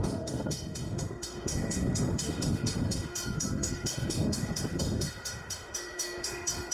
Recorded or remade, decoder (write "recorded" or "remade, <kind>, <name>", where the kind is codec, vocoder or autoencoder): remade, autoencoder, DAC-VAE